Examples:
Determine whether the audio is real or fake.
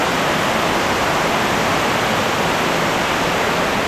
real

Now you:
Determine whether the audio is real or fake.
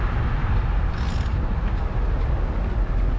real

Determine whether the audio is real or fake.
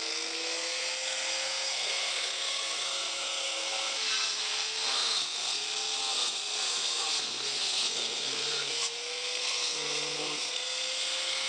fake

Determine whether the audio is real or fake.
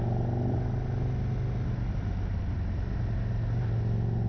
real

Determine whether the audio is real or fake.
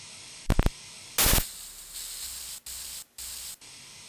real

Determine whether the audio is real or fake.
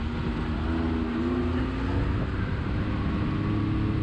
real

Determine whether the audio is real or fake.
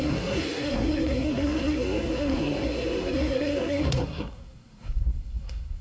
fake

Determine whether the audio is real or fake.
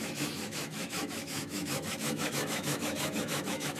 fake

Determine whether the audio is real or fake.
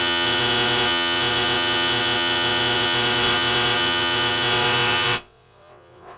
fake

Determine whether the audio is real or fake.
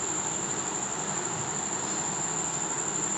real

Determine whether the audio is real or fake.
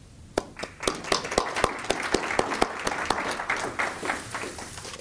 real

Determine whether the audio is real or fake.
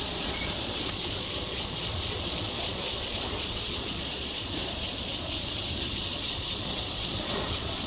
fake